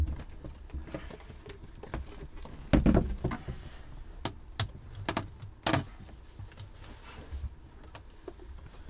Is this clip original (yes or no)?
yes